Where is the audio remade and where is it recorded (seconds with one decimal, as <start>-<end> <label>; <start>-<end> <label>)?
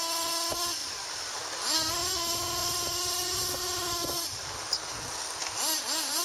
0.0-6.2 recorded